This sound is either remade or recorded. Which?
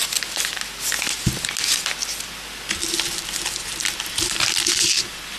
recorded